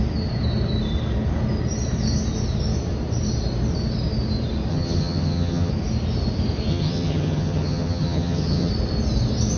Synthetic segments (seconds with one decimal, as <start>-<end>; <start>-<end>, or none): 4.7-5.7; 6.7-8.7